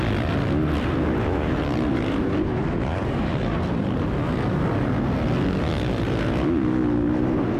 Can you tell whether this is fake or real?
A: real